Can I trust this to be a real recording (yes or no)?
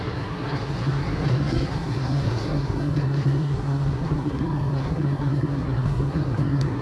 no